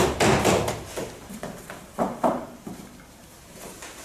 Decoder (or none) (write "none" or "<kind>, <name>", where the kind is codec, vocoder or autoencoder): vocoder, BigVGAN v2